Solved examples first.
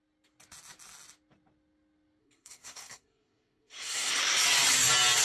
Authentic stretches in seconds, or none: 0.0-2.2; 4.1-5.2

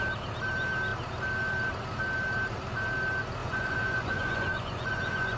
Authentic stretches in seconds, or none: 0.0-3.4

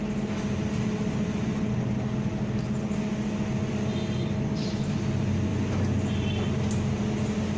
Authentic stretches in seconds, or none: 0.0-7.6

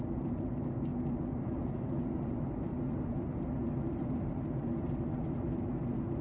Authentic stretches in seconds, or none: 0.0-6.2

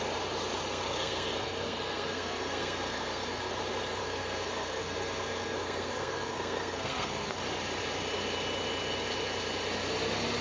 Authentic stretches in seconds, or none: 0.0-0.7; 3.5-4.0; 7.3-10.4